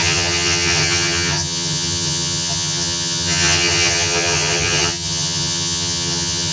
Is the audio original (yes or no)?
no